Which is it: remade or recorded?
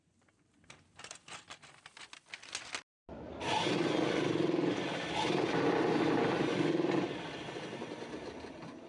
recorded